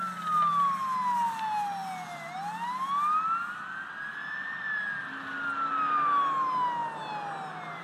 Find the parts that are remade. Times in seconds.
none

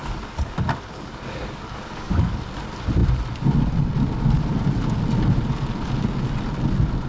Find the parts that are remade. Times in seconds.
0.0-2.4 (codec, DAC)

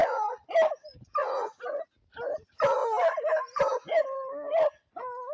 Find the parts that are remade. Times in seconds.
0.0-0.5 (vocoder, Vocos); 1.2-1.8

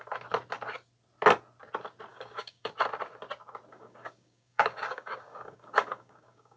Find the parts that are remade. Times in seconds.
2.1-2.7 (codec, DAC); 3.7-6.6

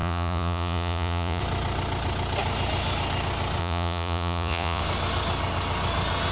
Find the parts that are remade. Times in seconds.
0.0-1.4 (vocoder, Vocos); 3.6-4.8

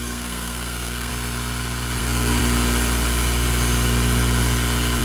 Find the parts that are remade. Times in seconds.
0.0-1.1 (codec, SNAC); 2.0-2.4

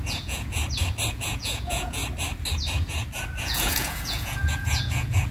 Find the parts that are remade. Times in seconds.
0.0-0.6 (vocoder, Vocos); 1.1-2.0; 3.4-5.3